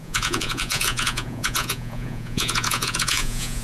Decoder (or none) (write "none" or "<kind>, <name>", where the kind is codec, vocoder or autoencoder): vocoder, Vocos